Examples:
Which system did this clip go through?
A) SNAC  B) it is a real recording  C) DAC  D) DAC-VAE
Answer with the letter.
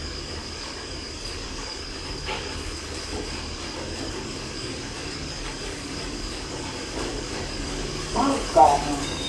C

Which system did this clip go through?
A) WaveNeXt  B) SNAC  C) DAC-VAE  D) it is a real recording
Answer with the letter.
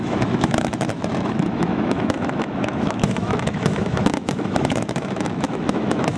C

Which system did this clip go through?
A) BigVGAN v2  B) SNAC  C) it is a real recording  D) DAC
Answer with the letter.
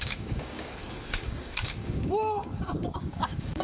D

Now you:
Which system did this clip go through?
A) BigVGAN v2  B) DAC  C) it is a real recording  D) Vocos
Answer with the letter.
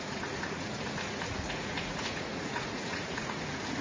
D